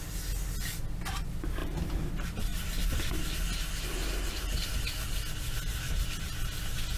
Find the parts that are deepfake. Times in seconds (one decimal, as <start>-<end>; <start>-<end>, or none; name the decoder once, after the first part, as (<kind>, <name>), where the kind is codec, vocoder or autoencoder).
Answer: 1.6-2.1 (vocoder, BigVGAN v2)